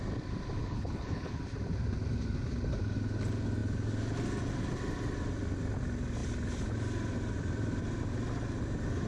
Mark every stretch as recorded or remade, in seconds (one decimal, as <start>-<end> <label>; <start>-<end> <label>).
0.0-0.6 recorded; 0.6-1.4 remade; 1.4-9.1 recorded

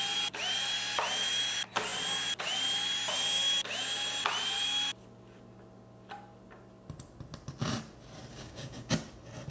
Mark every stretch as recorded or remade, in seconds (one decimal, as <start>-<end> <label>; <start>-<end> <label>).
0.0-8.3 recorded; 8.3-8.9 remade; 8.9-9.5 recorded

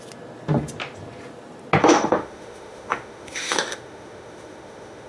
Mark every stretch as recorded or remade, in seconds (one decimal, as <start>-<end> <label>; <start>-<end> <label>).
0.0-1.8 recorded; 1.8-5.1 remade

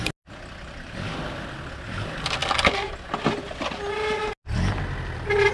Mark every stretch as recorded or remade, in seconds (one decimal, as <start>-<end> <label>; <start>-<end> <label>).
0.0-5.5 recorded

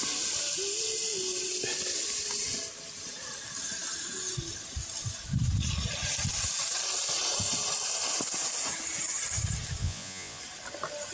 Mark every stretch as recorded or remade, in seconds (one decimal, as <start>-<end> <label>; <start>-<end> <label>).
0.0-9.8 recorded; 9.8-10.4 remade; 10.4-11.1 recorded

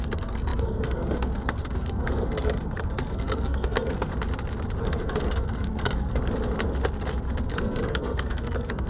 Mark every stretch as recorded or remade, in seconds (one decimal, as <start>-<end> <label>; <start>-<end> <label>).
0.0-4.1 remade; 4.1-4.8 recorded; 4.8-6.2 remade; 6.2-7.5 recorded; 7.5-8.9 remade

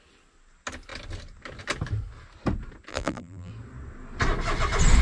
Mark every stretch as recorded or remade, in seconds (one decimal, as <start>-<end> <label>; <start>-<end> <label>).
0.0-2.9 recorded; 2.9-3.5 remade; 3.5-5.0 recorded

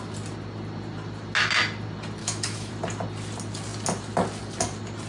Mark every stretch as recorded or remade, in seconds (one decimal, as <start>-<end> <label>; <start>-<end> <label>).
0.0-2.2 recorded; 2.2-2.7 remade; 2.7-5.1 recorded